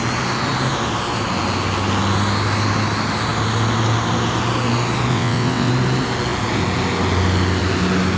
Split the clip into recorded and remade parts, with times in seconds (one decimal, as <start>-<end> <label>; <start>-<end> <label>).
0.0-5.1 recorded; 5.1-5.7 remade; 5.7-8.2 recorded